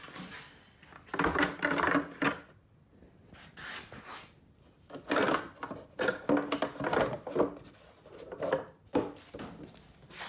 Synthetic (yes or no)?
no